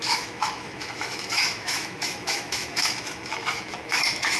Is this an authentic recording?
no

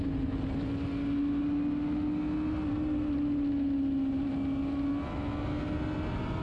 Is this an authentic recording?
yes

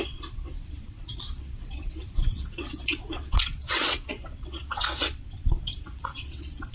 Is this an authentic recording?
no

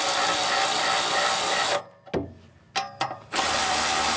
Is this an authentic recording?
yes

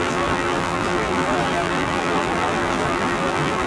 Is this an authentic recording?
no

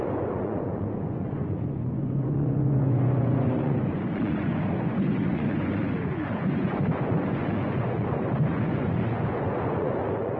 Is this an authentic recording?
no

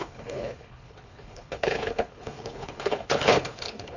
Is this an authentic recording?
no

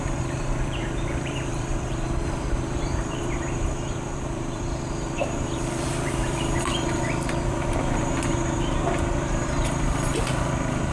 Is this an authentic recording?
no